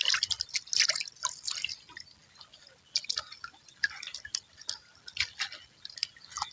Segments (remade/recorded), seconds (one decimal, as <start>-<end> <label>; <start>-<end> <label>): 0.0-6.5 recorded